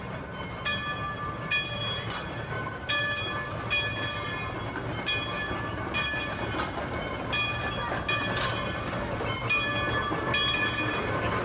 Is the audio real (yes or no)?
yes